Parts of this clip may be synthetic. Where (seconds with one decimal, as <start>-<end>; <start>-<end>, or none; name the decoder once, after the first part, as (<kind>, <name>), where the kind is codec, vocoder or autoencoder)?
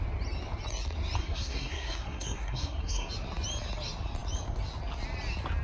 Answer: 1.2-3.1 (codec, SNAC)